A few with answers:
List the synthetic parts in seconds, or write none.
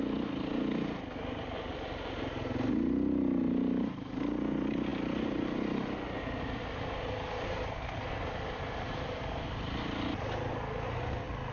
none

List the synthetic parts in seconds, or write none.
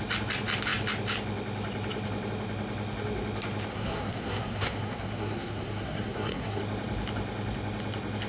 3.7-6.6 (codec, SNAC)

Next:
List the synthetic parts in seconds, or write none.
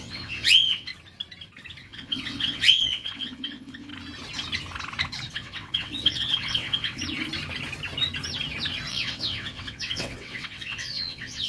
0.0-0.9 (vocoder, WaveNeXt); 1.8-3.9; 5.3-7.0; 8.9-11.5